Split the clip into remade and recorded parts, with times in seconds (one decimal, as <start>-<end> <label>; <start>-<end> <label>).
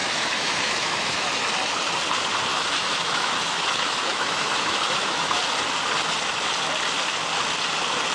0.0-1.3 remade; 1.3-2.5 recorded; 2.5-5.4 remade; 5.4-8.1 recorded